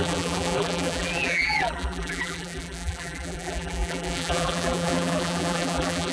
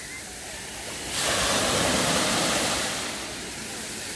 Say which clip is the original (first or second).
second